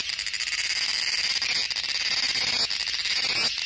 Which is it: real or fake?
real